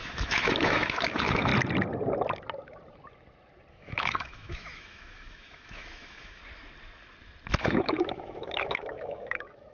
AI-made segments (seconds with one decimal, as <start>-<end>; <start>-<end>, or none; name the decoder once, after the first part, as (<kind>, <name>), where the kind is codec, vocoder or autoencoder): 0.0-1.5 (autoencoder, DAC-VAE); 3.7-6.4; 7.6-9.7